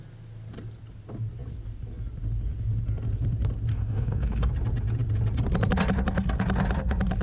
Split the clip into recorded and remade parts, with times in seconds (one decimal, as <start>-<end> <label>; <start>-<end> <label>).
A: 0.0-3.7 recorded; 3.7-4.5 remade; 4.5-7.2 recorded